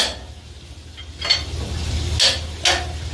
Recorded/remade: recorded